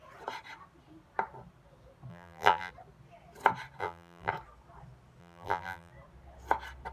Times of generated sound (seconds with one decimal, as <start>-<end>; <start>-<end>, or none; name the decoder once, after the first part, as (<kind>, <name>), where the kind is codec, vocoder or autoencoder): 2.1-2.7 (vocoder, BigVGAN v2); 3.8-4.3; 5.2-5.9